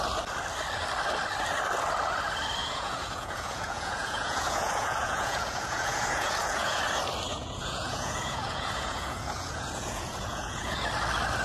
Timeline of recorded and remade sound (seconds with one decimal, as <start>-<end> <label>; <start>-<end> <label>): 0.0-2.6 recorded; 2.6-6.8 remade; 6.8-7.3 recorded; 7.3-10.9 remade; 10.9-11.4 recorded